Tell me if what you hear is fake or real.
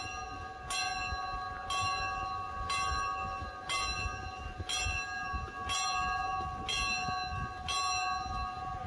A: real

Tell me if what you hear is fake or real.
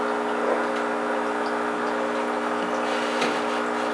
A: real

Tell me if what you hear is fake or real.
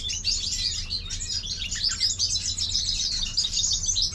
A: real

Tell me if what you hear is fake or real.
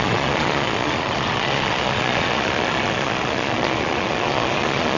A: fake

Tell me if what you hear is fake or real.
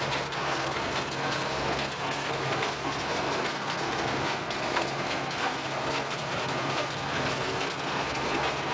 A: fake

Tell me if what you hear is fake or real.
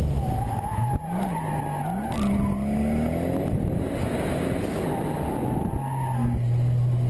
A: real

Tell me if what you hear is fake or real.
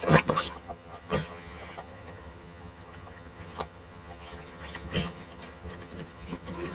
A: fake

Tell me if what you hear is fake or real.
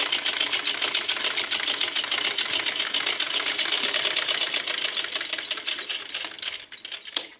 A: real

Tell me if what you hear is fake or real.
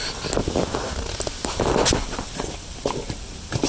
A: real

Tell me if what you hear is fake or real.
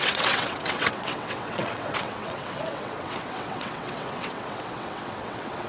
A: fake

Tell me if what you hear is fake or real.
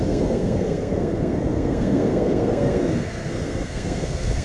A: fake